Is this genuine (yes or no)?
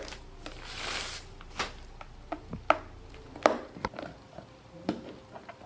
yes